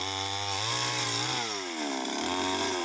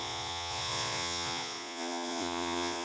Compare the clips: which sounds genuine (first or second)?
first